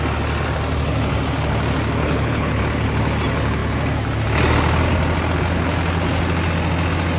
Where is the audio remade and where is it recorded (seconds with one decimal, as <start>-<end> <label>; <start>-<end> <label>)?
0.0-2.0 recorded; 2.0-2.6 remade; 2.6-7.2 recorded